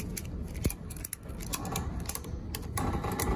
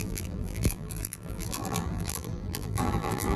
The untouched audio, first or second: first